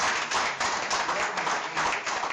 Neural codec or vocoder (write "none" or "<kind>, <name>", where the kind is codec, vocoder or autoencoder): none